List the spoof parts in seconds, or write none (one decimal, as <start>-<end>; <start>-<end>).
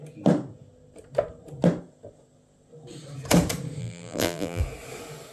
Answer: 3.8-4.6